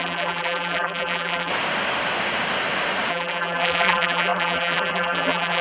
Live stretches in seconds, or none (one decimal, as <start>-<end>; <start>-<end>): 1.5-3.1